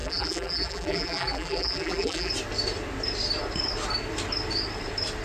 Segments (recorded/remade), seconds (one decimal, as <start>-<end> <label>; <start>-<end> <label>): 0.0-2.3 remade; 2.3-5.2 recorded